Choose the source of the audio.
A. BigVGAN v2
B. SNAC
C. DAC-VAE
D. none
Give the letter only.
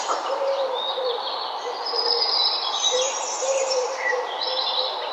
A